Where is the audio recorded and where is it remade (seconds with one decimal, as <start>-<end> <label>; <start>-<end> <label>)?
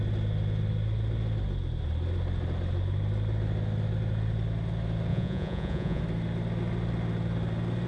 0.0-5.1 recorded; 5.1-6.0 remade; 6.0-7.9 recorded